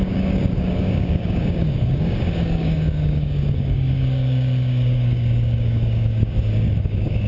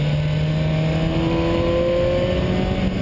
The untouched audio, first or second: second